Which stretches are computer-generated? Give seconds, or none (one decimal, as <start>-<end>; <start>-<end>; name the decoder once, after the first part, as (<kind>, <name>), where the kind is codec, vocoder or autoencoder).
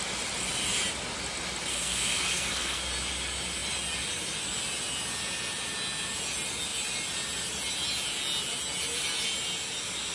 1.7-2.8 (codec, SNAC)